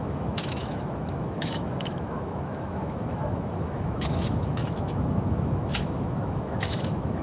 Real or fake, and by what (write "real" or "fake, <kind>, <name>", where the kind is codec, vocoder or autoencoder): fake, autoencoder, DAC-VAE